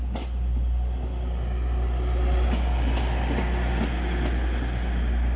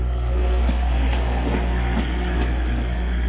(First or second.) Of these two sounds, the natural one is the first